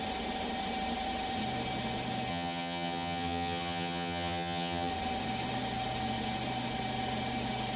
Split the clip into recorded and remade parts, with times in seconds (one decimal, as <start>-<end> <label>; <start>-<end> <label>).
0.0-2.3 recorded; 2.3-4.9 remade; 4.9-7.8 recorded